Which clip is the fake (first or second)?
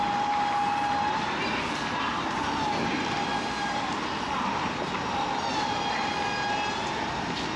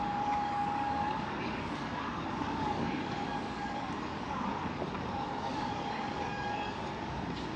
second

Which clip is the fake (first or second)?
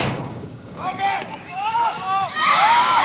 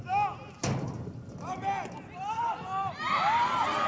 first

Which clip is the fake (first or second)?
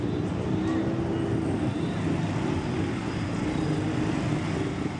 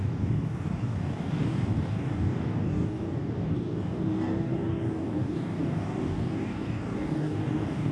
second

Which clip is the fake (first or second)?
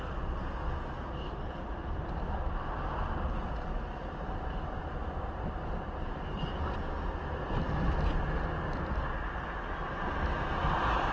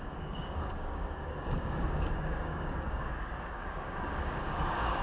second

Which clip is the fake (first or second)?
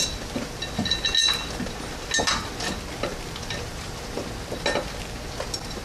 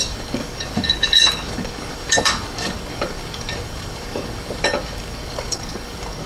second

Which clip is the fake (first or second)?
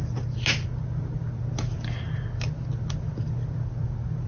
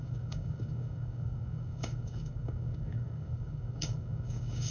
second